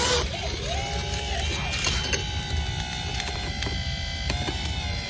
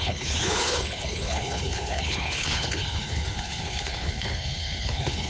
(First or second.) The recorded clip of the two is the first